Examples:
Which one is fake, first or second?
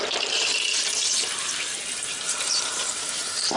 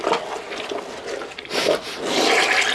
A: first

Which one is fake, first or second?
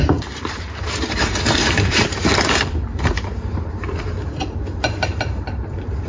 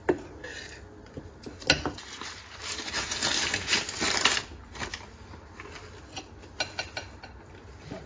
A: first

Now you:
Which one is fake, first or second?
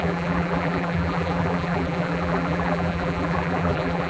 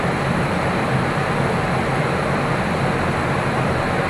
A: first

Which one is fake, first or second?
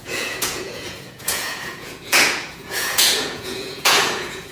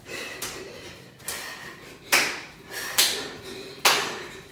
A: first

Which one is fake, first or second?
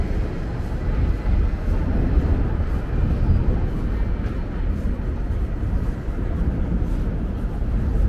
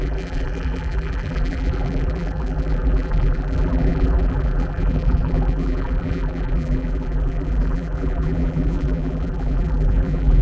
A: second